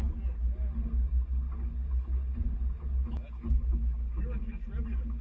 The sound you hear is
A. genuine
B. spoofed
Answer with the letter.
A